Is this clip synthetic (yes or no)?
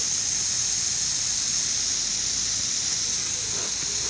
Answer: no